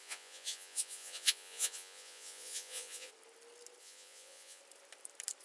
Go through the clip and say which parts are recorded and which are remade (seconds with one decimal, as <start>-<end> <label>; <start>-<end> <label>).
0.0-3.1 remade; 3.1-3.8 recorded; 3.8-4.6 remade; 4.6-5.4 recorded